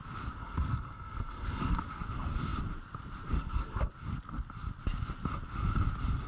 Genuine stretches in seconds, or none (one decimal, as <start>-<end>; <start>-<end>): 0.0-0.4; 1.8-3.4; 3.9-6.3